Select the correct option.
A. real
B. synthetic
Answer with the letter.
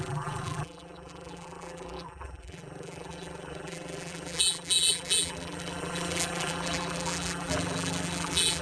B